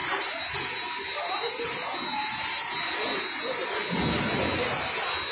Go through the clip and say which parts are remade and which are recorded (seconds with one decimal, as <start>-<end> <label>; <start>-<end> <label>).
0.0-5.3 recorded